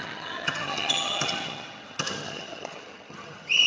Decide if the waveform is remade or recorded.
remade